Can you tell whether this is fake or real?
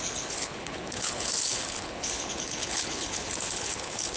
fake